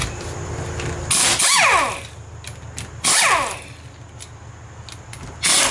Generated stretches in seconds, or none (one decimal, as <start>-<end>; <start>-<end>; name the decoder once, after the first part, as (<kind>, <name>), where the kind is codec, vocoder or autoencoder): none